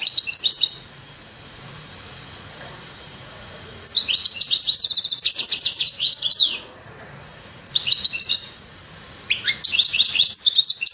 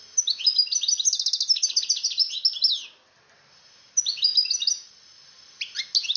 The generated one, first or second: first